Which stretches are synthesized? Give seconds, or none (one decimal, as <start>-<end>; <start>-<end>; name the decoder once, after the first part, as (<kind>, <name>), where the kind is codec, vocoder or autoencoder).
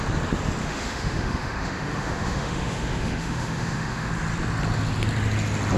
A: 0.6-4.1 (autoencoder, DAC-VAE)